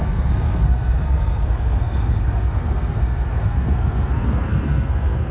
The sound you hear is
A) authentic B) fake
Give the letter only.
B